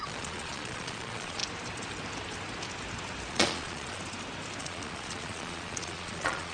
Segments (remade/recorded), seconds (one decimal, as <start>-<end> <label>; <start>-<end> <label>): 0.0-1.4 remade; 1.4-3.3 recorded; 3.3-4.0 remade; 4.0-4.6 recorded; 4.6-6.5 remade